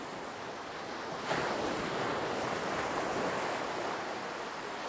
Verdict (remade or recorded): recorded